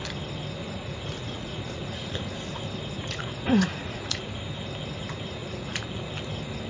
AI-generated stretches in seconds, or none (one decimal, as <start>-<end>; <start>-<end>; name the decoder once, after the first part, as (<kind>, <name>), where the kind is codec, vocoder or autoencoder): 0.6-2.3 (vocoder, Vocos); 3.0-4.4; 5.4-6.1